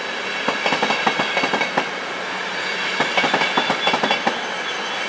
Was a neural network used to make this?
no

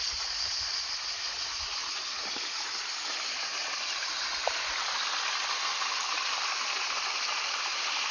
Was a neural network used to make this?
no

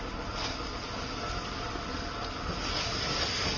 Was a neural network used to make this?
no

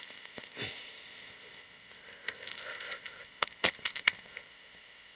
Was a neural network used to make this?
yes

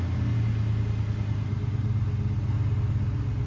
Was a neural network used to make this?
no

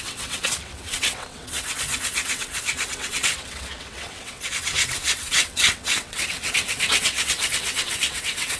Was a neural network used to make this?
yes